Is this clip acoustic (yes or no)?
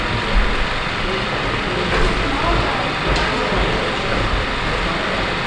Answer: yes